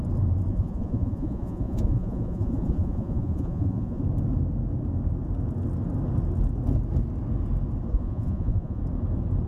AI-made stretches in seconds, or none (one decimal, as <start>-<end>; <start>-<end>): 0.5-4.0; 7.9-8.8